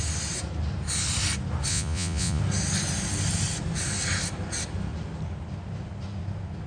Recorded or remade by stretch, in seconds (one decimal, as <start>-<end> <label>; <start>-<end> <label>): 0.0-1.7 recorded; 1.7-2.4 remade; 2.4-6.7 recorded